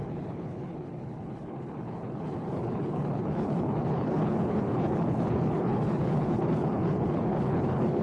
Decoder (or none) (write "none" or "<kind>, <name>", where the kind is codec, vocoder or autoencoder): codec, HILCodec